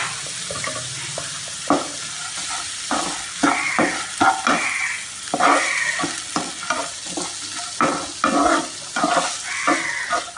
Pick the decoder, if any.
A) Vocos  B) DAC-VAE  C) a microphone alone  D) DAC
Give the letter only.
C